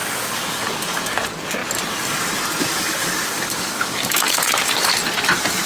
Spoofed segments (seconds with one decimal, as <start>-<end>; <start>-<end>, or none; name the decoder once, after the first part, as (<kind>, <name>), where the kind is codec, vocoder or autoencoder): 0.0-1.6 (codec, DAC); 2.7-4.9